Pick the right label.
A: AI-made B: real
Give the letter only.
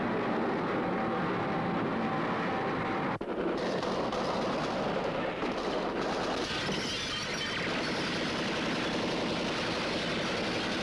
B